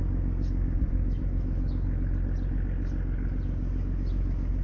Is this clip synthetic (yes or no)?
no